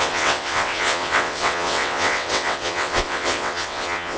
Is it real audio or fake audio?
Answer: fake